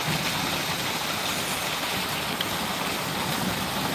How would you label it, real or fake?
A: real